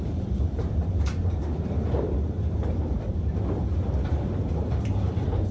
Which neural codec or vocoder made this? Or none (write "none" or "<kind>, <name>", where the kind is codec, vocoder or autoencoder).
vocoder, BigVGAN v2